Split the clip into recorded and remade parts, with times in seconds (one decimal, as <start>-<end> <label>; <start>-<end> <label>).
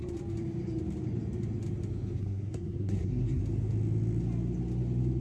0.0-2.2 recorded; 2.2-3.4 remade; 3.4-5.2 recorded